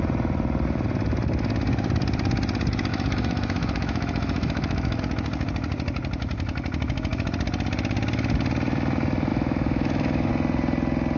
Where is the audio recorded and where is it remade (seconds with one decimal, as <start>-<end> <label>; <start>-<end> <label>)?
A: 0.0-2.9 recorded; 2.9-5.0 remade; 5.0-9.3 recorded; 9.3-10.3 remade; 10.3-11.2 recorded